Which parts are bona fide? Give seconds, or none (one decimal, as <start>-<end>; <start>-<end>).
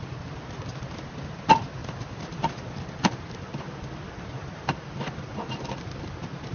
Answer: 0.0-1.8; 5.7-6.5